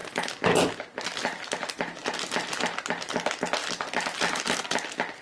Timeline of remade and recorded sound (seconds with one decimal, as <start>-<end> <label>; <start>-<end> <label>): 0.0-5.2 recorded